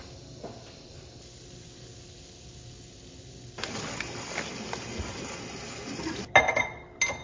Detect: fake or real real